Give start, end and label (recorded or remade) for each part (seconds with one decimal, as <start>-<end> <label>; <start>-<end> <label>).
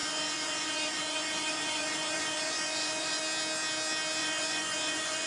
0.0-3.2 remade; 3.2-4.2 recorded; 4.2-5.3 remade